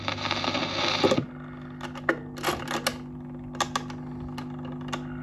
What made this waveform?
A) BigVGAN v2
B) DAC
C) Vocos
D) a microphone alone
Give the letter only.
D